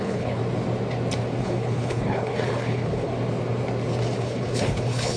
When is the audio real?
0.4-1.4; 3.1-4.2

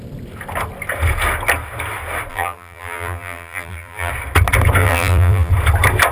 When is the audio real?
0.0-2.3; 4.1-4.8; 5.5-6.1

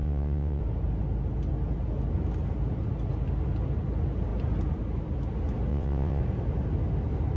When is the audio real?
0.6-5.7; 6.2-7.4

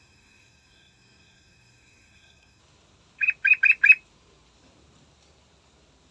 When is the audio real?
2.6-6.1

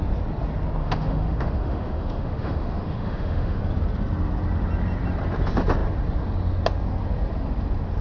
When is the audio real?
0.0-0.8; 3.6-8.0

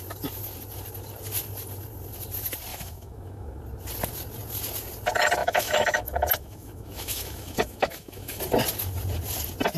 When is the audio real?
0.0-2.7; 3.6-5.4; 8.4-9.8